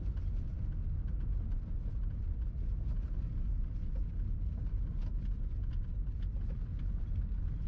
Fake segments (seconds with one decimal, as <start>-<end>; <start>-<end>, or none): none